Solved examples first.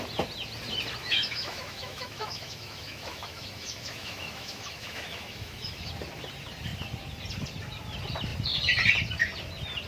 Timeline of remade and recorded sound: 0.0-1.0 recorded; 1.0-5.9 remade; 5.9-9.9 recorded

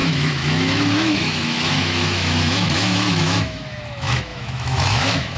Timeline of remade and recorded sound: 0.0-5.4 remade